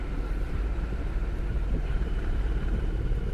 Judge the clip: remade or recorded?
remade